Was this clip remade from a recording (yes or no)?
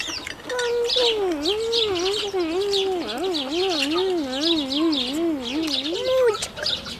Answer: no